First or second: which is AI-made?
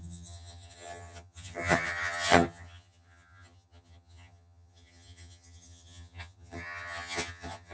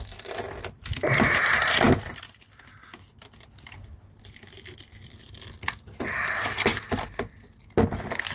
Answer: first